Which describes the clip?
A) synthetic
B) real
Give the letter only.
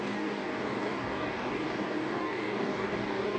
A